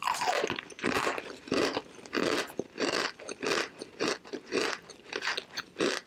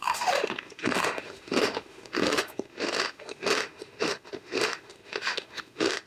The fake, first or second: second